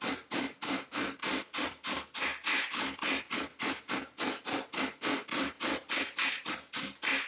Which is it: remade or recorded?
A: recorded